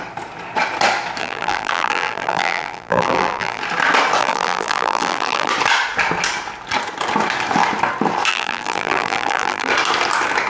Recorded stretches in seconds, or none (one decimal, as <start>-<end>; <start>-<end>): 0.0-1.2; 3.6-4.2; 5.5-8.3; 9.7-10.5